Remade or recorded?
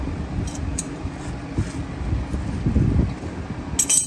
recorded